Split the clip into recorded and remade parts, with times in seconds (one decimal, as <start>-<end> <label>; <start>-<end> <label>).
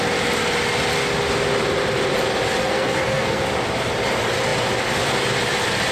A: 0.0-2.6 recorded; 2.6-3.4 remade; 3.4-5.9 recorded